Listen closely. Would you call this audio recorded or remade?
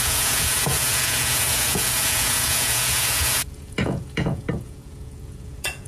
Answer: remade